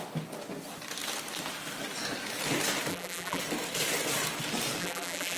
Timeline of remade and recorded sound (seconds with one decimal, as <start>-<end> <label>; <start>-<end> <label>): 0.0-2.9 recorded; 2.9-3.4 remade; 3.4-4.8 recorded; 4.8-5.4 remade